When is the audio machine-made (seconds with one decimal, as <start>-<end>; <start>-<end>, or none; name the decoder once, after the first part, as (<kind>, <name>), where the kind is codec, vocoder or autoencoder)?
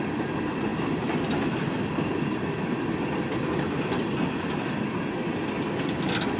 none